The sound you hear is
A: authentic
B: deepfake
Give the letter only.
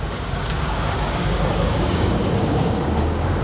B